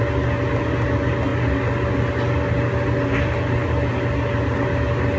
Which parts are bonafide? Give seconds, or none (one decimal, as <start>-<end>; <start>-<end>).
0.0-5.2